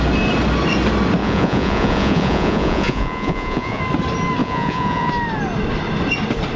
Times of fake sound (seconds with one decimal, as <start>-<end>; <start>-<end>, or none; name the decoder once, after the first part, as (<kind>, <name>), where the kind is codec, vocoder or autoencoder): 1.2-3.8 (vocoder, Vocos); 4.4-5.1